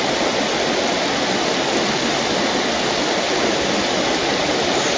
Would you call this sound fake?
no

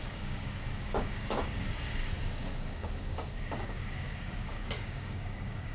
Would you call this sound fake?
yes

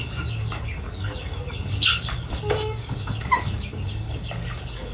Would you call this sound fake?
yes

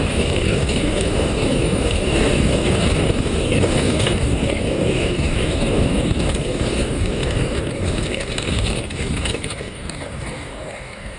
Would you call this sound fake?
yes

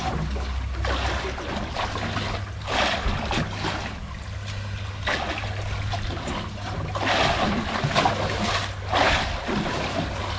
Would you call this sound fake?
no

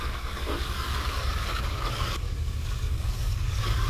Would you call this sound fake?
yes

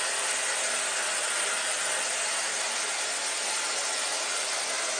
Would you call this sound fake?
no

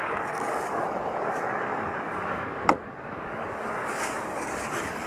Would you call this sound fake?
yes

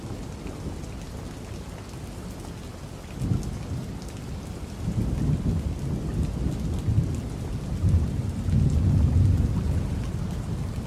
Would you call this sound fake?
no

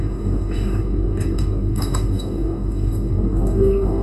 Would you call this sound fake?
yes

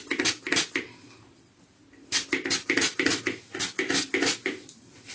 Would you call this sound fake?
no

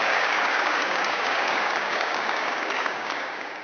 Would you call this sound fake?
yes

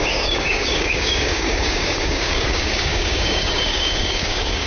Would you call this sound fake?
yes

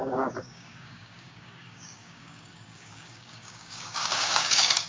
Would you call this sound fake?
yes